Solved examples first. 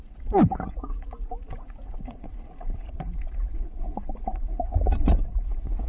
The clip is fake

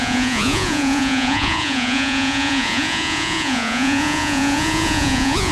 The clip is fake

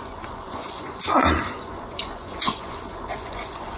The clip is fake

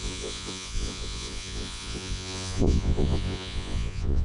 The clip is fake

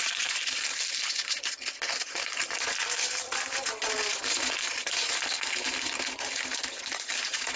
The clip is real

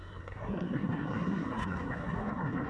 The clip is fake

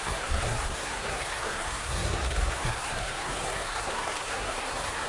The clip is fake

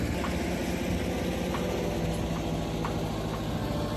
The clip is real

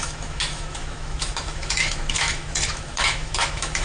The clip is fake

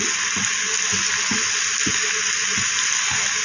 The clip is real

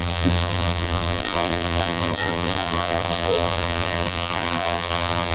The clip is fake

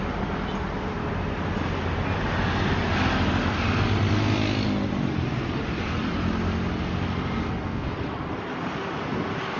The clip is real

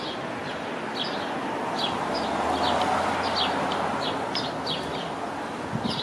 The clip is real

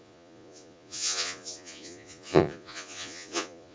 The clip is fake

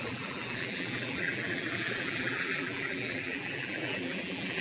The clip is fake